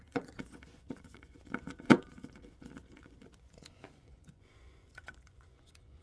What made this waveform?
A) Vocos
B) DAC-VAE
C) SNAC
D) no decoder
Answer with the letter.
A